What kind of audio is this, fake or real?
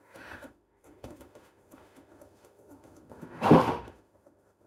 fake